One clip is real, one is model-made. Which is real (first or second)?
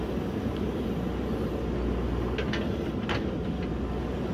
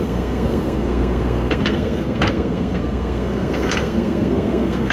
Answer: first